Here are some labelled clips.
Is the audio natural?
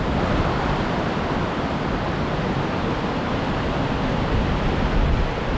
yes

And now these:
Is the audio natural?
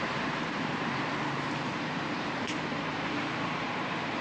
no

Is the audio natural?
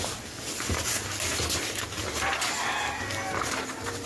yes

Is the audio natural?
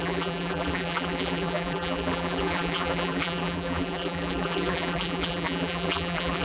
no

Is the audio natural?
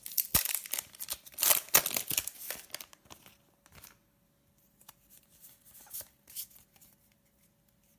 yes